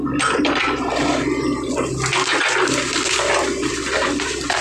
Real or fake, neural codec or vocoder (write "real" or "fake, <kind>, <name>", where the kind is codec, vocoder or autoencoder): real